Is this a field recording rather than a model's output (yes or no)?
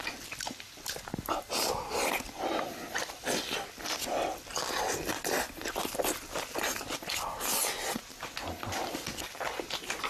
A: yes